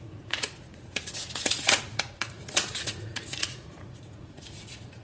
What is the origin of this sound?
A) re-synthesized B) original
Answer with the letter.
A